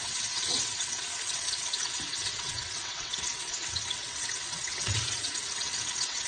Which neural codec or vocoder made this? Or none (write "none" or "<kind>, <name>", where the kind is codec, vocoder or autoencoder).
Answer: vocoder, WaveNeXt